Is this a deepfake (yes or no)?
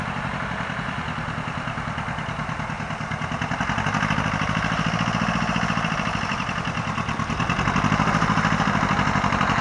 no